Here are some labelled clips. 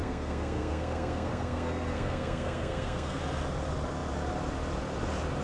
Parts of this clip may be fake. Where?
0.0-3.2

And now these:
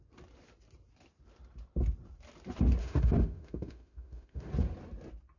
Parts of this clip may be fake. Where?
2.8-4.5

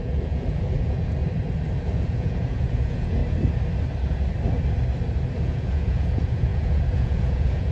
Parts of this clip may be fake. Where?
0.0-1.2; 1.8-3.2; 5.4-7.7

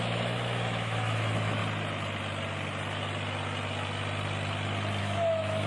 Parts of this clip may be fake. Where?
0.0-1.6; 5.0-5.7

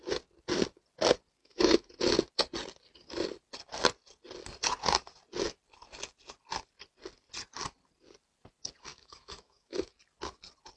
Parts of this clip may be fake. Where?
1.4-1.9; 8.9-9.9

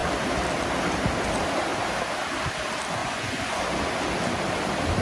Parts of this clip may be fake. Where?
3.0-3.6